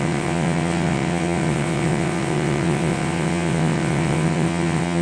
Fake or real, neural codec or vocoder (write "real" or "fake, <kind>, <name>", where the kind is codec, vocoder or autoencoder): fake, vocoder, WaveNeXt